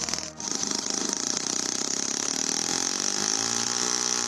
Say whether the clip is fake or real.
real